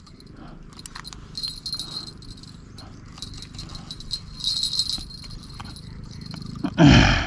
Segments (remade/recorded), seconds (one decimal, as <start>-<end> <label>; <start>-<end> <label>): 0.0-5.6 recorded; 5.6-7.3 remade

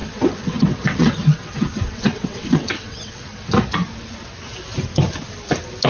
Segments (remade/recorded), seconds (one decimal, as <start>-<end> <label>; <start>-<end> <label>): 0.0-3.5 remade; 3.5-5.9 recorded